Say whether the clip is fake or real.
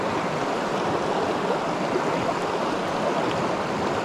real